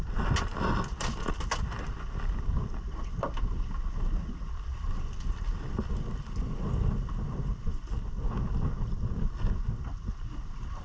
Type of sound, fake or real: real